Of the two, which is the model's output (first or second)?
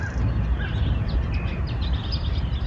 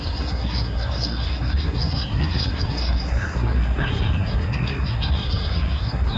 second